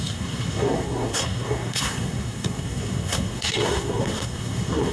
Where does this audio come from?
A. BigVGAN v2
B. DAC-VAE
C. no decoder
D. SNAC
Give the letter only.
D